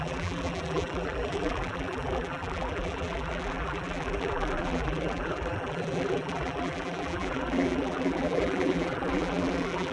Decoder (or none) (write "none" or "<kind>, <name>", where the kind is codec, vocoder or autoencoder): vocoder, BigVGAN v2